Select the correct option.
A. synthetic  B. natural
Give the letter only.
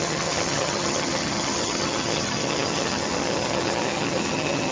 A